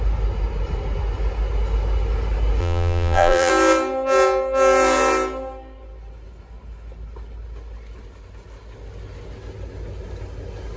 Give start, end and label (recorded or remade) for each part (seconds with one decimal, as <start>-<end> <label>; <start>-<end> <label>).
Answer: 0.0-2.6 recorded; 2.6-3.5 remade; 3.5-10.8 recorded

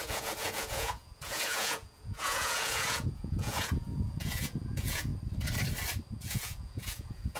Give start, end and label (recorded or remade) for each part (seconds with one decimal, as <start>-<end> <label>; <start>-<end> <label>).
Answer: 0.0-5.1 remade; 5.1-6.2 recorded; 6.2-7.4 remade

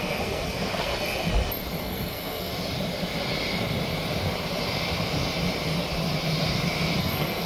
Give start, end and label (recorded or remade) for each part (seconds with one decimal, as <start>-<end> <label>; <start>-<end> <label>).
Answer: 0.0-1.3 remade; 1.3-1.8 recorded; 1.8-2.5 remade; 2.5-7.0 recorded; 7.0-7.5 remade

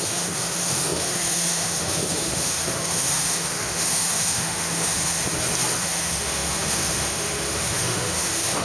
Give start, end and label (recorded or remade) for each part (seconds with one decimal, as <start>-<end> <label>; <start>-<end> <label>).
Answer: 0.0-5.2 remade; 5.2-5.8 recorded; 5.8-8.6 remade